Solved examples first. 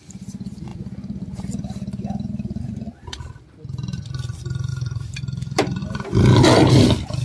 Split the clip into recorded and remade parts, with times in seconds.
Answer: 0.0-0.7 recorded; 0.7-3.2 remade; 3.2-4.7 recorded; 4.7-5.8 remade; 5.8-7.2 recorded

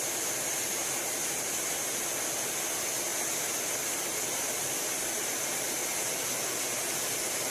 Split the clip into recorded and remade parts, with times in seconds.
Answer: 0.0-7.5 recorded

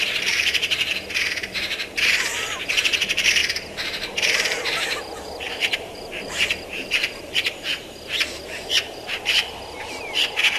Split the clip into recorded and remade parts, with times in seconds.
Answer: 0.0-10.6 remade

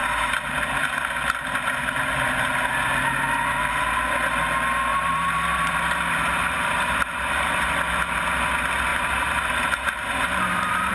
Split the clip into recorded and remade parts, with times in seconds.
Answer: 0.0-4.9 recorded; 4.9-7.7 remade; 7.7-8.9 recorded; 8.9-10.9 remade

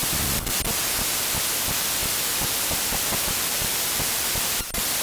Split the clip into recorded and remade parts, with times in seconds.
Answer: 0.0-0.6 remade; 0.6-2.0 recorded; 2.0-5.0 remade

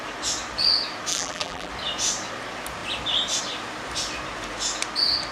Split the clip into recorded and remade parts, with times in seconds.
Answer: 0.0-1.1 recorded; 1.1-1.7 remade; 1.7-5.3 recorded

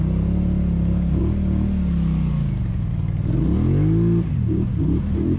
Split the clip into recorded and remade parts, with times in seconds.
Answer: 0.0-1.2 remade; 1.2-4.3 recorded; 4.3-5.4 remade